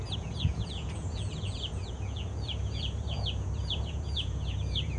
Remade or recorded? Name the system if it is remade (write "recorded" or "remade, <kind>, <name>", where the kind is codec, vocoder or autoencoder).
remade, vocoder, Vocos